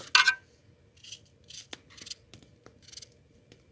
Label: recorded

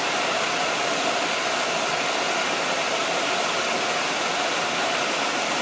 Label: recorded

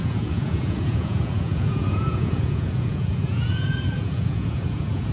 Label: remade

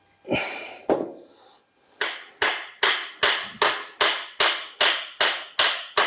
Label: recorded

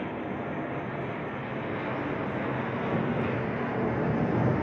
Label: recorded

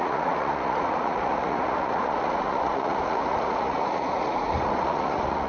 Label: remade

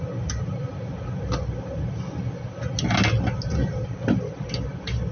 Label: recorded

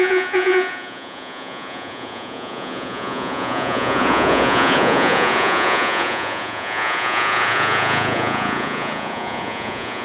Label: remade